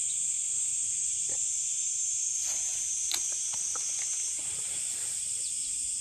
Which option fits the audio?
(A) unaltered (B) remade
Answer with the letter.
A